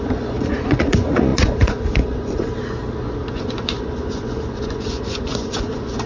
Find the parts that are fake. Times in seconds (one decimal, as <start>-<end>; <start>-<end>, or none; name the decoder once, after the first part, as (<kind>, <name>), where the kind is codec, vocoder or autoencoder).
0.0-2.5 (vocoder, Vocos); 3.3-6.1